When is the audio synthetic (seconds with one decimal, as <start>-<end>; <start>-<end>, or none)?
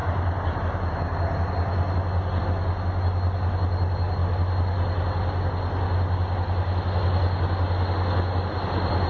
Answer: none